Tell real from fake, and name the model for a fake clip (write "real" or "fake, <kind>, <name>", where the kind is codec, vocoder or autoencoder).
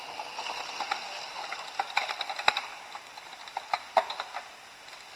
real